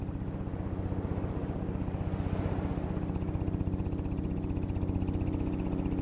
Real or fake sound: real